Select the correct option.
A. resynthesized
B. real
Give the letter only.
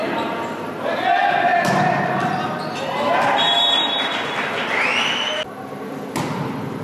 B